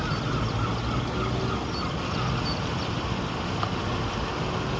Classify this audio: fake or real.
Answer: real